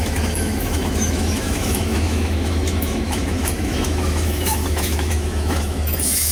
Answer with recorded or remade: remade